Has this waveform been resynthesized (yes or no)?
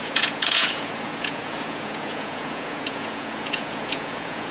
yes